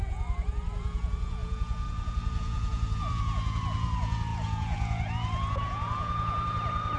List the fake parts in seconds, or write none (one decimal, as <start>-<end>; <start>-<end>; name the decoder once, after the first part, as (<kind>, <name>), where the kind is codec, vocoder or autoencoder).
0.0-7.0 (vocoder, Vocos)